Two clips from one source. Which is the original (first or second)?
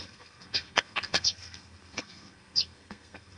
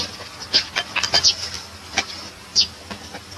second